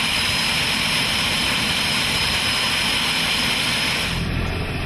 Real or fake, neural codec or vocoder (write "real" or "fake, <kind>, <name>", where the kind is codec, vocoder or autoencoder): real